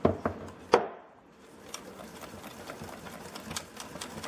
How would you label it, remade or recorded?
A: recorded